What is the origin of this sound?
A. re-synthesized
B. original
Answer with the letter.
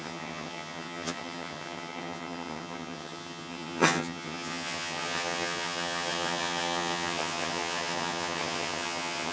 A